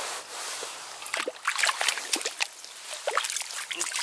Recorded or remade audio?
recorded